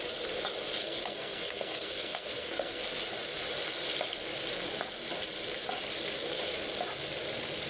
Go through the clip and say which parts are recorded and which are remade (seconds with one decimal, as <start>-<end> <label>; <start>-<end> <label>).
0.0-0.8 recorded; 0.8-2.8 remade; 2.8-7.7 recorded